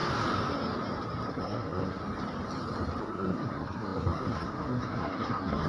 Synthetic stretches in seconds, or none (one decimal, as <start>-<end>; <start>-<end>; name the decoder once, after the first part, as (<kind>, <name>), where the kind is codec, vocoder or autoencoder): 1.3-2.0 (codec, SNAC); 3.0-5.7